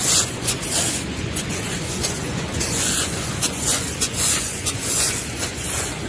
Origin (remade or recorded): remade